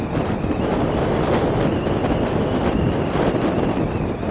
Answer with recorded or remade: recorded